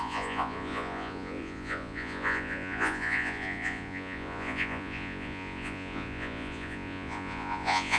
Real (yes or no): no